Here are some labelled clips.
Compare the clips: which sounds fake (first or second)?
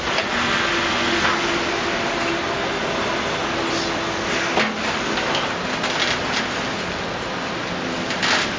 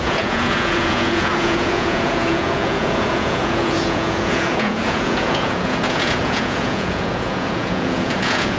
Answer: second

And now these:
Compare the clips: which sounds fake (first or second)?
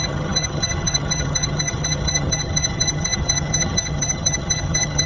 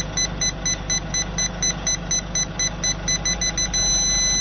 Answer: first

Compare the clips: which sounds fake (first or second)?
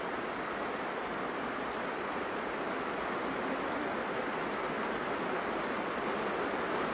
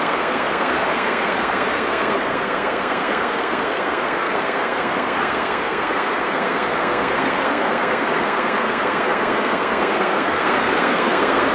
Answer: second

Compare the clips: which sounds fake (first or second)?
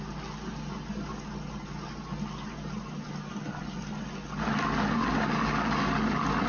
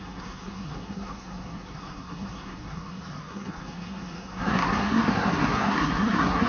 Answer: second